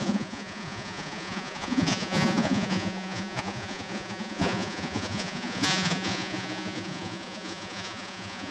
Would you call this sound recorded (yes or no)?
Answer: no